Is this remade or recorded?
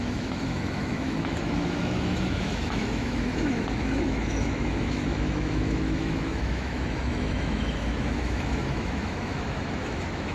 remade